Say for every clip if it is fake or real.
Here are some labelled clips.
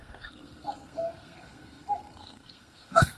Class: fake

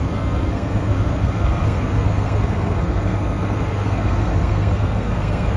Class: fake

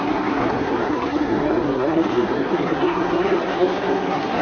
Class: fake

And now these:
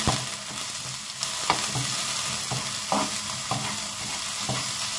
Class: real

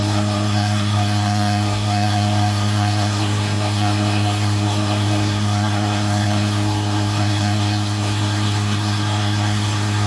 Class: fake